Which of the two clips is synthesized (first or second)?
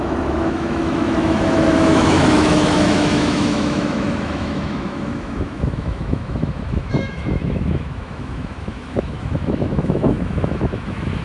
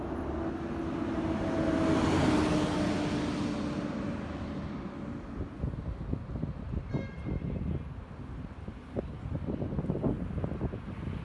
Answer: first